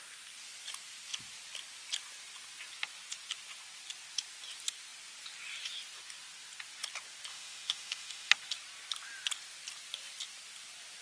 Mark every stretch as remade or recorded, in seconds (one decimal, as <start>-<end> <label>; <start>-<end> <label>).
0.0-7.3 recorded; 7.3-8.3 remade; 8.3-11.0 recorded

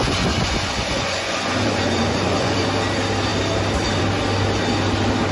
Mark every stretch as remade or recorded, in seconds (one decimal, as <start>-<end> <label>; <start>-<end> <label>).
0.0-2.7 remade; 2.7-5.3 recorded

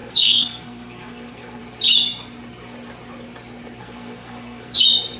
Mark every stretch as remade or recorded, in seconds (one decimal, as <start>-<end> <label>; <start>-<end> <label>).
0.0-1.6 remade; 1.6-3.8 recorded; 3.8-4.8 remade; 4.8-5.2 recorded

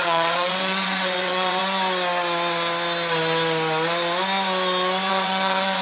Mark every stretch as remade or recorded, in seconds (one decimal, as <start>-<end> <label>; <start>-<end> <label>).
0.0-1.6 remade; 1.6-5.1 recorded; 5.1-5.8 remade

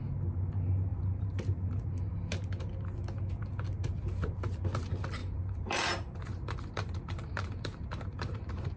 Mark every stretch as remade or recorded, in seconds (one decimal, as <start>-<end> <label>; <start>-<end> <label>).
0.0-0.9 recorded; 0.9-2.0 remade; 2.0-5.2 recorded; 5.2-8.8 remade

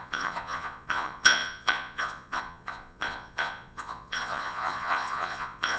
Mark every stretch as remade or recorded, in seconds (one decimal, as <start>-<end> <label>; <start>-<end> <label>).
0.0-5.8 remade

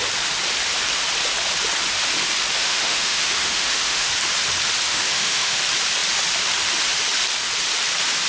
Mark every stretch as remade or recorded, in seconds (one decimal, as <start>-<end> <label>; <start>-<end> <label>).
0.0-2.6 recorded; 2.6-4.1 remade; 4.1-4.9 recorded; 4.9-5.6 remade; 5.6-8.3 recorded

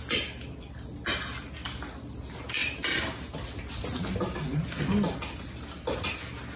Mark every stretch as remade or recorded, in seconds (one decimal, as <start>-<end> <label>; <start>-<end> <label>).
0.0-6.6 recorded